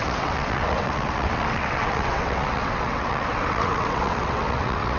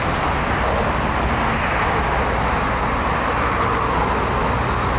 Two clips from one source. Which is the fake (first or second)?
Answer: first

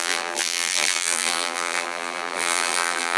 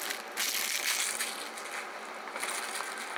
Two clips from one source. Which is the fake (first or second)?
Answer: first